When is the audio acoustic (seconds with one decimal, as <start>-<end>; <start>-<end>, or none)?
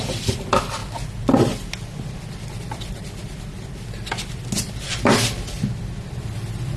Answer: 0.0-6.8